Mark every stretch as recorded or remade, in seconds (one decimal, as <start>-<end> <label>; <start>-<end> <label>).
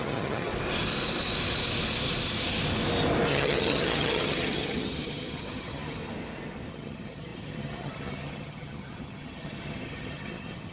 0.0-0.5 remade; 0.5-3.3 recorded; 3.3-6.0 remade; 6.0-6.7 recorded; 6.7-10.7 remade